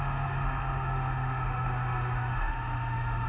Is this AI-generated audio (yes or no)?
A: yes